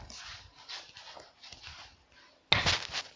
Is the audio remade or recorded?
recorded